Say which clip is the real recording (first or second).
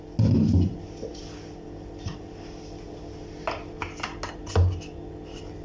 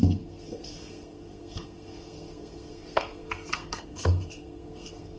first